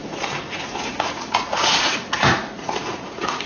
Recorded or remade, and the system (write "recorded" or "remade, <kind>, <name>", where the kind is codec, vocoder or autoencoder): remade, vocoder, Vocos